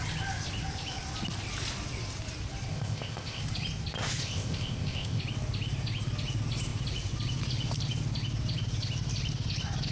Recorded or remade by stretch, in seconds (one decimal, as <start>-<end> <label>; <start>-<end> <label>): 0.0-2.7 recorded; 2.7-3.4 remade; 3.4-4.2 recorded; 4.2-5.2 remade; 5.2-9.9 recorded